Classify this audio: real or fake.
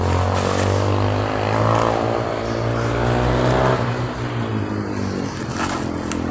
real